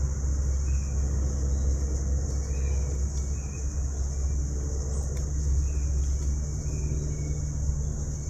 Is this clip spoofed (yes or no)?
no